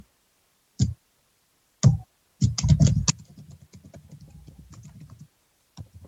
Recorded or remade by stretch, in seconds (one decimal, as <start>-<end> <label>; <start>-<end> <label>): 0.0-6.1 recorded